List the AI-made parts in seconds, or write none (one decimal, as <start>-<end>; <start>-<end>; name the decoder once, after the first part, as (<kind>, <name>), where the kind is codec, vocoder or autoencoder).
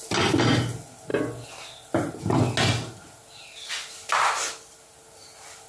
none